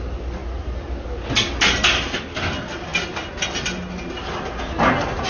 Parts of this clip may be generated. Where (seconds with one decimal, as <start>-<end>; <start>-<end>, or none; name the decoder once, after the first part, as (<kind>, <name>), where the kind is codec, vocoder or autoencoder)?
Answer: none